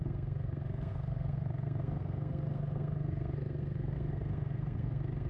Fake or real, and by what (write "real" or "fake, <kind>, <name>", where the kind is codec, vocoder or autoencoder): fake, codec, SNAC